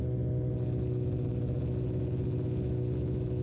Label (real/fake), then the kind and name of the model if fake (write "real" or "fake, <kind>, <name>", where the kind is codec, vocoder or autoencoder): real